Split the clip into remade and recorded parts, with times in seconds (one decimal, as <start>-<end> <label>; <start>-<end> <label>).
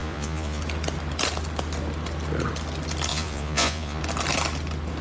0.0-0.6 remade; 0.6-3.1 recorded; 3.1-4.0 remade; 4.0-5.0 recorded